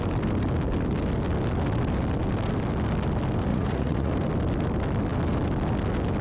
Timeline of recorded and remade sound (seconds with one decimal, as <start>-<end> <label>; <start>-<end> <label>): 0.0-3.5 recorded; 3.5-4.1 remade; 4.1-6.2 recorded